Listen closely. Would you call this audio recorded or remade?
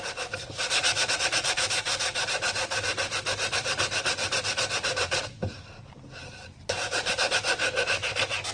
remade